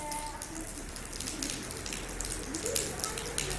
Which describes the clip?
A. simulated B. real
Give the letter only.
B